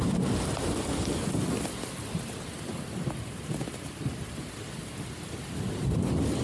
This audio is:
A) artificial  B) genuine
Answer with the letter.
B